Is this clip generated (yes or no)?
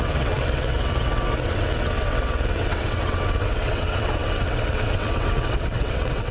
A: yes